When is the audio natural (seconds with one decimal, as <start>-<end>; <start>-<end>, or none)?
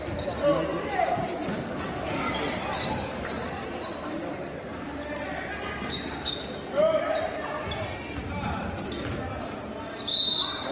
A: 0.0-0.7; 5.0-10.7